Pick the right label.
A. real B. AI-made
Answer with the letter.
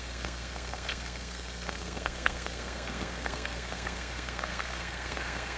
B